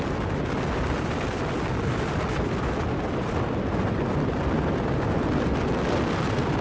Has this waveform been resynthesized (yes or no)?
no